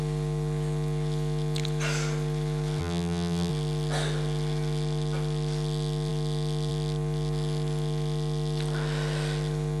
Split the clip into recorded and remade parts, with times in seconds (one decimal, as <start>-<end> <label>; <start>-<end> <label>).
0.0-2.8 recorded; 2.8-3.5 remade; 3.5-9.8 recorded